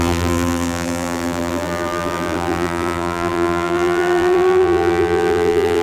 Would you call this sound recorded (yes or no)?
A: no